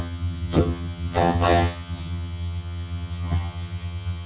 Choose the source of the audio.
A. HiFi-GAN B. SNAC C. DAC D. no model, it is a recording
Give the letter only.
A